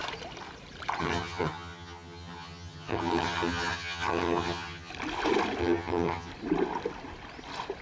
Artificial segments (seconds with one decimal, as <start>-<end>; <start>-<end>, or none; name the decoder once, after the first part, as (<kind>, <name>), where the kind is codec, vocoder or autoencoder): 1.0-4.9 (vocoder, HiFi-GAN); 5.6-6.3